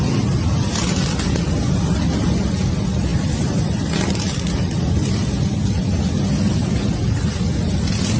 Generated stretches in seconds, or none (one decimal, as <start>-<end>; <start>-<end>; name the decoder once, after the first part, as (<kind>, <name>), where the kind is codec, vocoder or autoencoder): none